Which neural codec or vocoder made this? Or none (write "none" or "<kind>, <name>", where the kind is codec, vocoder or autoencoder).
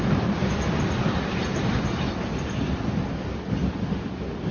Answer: none